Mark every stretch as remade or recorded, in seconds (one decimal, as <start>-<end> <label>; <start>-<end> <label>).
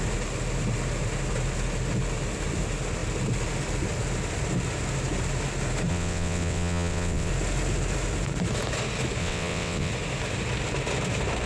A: 0.0-5.9 recorded; 5.9-7.3 remade; 7.3-9.2 recorded; 9.2-9.9 remade; 9.9-11.5 recorded